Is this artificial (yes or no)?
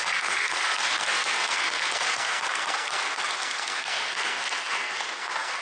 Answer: yes